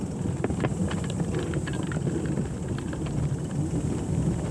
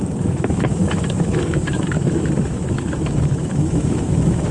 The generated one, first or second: second